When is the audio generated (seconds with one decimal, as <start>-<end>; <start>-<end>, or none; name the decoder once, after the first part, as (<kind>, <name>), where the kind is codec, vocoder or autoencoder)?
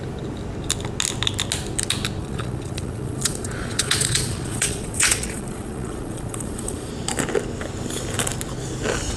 2.2-6.9 (vocoder, Vocos)